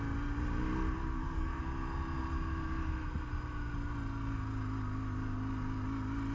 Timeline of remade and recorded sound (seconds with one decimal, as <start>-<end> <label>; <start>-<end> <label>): 0.0-1.0 recorded; 1.0-1.6 remade; 1.6-6.3 recorded